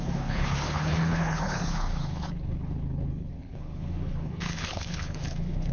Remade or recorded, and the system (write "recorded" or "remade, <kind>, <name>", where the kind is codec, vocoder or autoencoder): remade, codec, HILCodec